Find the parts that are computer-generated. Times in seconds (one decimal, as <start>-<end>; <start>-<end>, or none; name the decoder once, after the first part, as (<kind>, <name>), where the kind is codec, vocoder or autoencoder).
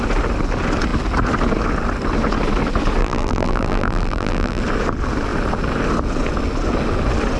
3.0-4.6 (vocoder, BigVGAN v2)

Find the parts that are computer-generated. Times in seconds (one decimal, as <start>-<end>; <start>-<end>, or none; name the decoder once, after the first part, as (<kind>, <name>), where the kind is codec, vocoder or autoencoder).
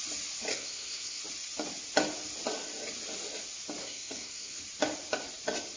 0.5-1.2 (codec, SNAC); 3.8-4.6